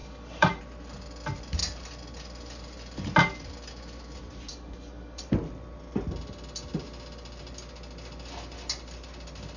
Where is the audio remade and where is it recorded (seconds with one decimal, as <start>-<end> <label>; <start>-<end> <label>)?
0.0-0.6 remade; 0.6-4.5 recorded; 4.5-5.3 remade; 5.3-9.6 recorded